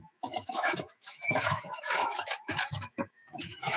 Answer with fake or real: fake